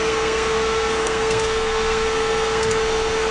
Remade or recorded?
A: remade